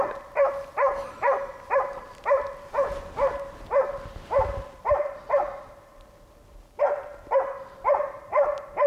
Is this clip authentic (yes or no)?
yes